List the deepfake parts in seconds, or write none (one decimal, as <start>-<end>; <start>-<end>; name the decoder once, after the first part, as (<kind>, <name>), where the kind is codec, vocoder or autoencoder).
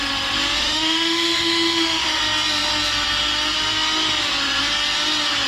0.6-2.2 (autoencoder, DAC-VAE)